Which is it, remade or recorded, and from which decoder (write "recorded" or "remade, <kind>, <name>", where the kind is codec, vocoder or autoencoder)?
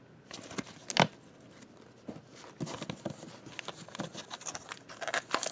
recorded